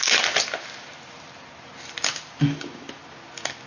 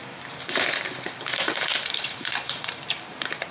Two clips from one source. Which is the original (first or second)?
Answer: first